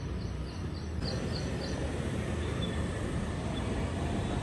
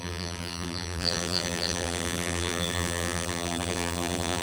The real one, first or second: first